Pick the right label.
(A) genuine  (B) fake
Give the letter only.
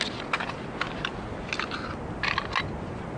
A